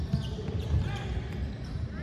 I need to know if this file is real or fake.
fake